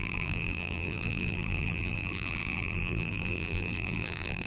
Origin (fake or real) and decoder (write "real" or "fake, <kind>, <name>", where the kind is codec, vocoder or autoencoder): fake, vocoder, BigVGAN v2